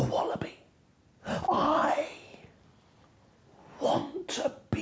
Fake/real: real